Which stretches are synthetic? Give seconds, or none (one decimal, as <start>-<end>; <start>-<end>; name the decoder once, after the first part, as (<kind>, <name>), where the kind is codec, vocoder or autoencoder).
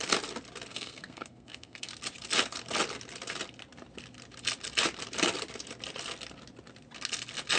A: 0.7-1.9 (codec, SNAC)